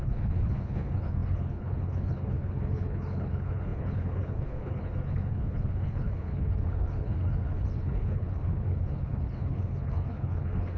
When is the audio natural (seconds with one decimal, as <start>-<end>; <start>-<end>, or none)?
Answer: none